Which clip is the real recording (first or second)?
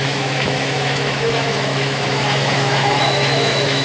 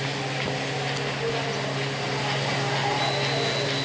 second